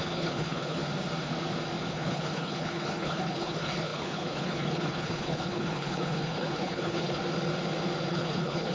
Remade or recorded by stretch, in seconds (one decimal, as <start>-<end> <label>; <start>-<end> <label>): 0.0-0.8 remade; 0.8-1.9 recorded; 1.9-7.2 remade; 7.2-8.1 recorded; 8.1-8.7 remade